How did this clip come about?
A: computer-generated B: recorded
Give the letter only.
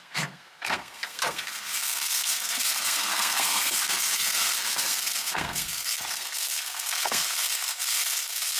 A